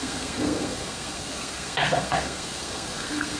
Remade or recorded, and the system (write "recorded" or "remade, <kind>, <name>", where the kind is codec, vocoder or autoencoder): remade, codec, SNAC